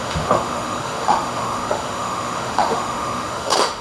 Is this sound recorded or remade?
remade